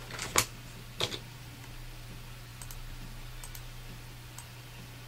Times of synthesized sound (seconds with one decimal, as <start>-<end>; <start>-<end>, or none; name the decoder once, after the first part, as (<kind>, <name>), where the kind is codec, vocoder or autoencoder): none